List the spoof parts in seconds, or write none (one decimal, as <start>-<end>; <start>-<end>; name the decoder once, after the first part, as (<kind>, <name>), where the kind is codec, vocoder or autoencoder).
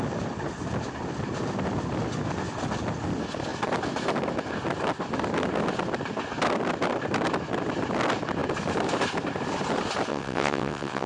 10.1-11.1 (vocoder, WaveNeXt)